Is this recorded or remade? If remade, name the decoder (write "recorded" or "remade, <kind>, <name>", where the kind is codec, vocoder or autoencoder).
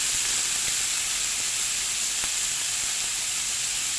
recorded